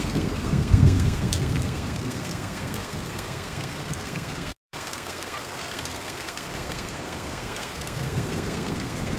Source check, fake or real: fake